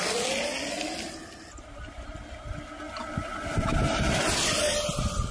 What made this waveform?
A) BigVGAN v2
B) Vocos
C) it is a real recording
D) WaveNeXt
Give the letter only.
C